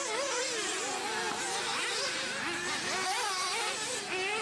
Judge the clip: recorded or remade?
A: recorded